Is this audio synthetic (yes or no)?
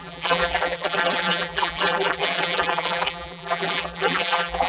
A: yes